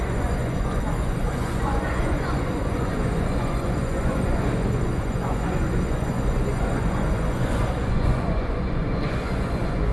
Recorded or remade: remade